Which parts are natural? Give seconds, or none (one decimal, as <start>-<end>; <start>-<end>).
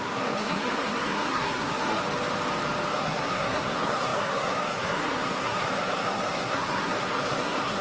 2.0-2.9